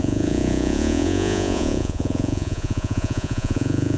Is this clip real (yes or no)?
no